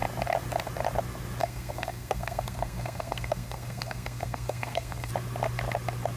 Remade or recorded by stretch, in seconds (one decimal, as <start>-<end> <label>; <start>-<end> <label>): 0.0-1.4 recorded; 1.4-5.1 remade; 5.1-6.2 recorded